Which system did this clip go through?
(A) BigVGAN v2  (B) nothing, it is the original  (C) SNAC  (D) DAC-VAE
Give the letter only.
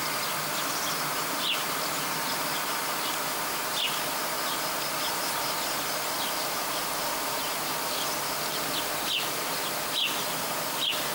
B